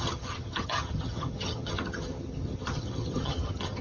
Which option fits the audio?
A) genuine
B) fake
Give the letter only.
B